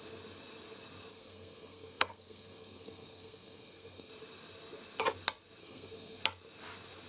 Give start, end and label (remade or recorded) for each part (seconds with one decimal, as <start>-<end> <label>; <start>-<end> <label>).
0.0-1.1 recorded; 1.1-4.1 remade; 4.1-5.6 recorded; 5.6-6.2 remade; 6.2-7.1 recorded

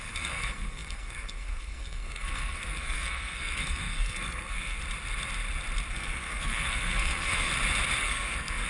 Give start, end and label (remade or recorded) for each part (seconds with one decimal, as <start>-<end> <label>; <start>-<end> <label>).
0.0-4.8 remade; 4.8-5.9 recorded; 5.9-7.5 remade; 7.5-8.0 recorded; 8.0-8.7 remade

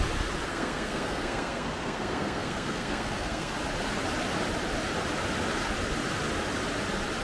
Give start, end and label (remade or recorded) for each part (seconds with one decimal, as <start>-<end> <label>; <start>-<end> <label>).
0.0-0.5 recorded; 0.5-3.5 remade; 3.5-7.2 recorded

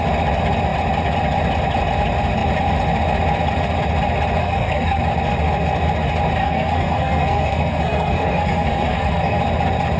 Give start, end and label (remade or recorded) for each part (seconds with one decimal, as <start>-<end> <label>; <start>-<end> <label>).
0.0-4.4 recorded; 4.4-5.0 remade; 5.0-6.4 recorded; 6.4-9.4 remade; 9.4-10.0 recorded

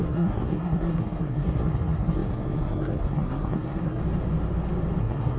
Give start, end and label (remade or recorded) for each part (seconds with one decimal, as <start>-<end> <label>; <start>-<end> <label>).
0.0-4.0 remade; 4.0-5.0 recorded; 5.0-5.4 remade